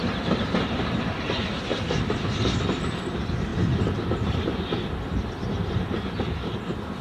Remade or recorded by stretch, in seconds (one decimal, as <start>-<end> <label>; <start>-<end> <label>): 0.0-1.7 recorded; 1.7-3.0 remade; 3.0-7.0 recorded